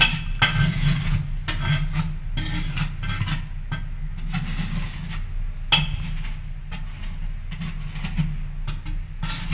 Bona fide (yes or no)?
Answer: yes